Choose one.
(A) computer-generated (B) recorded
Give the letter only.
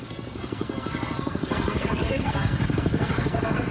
A